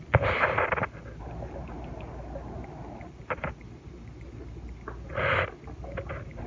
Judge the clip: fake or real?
real